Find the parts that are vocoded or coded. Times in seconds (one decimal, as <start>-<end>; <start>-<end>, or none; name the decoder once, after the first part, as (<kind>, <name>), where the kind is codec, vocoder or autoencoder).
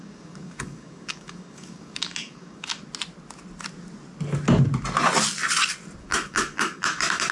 0.0-2.8 (codec, DAC); 6.0-7.3